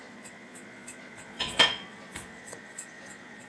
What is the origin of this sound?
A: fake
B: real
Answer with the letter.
A